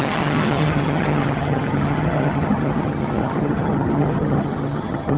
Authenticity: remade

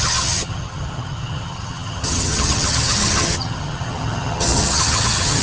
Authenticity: remade